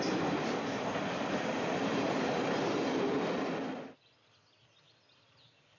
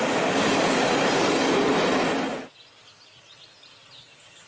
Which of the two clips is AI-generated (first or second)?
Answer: first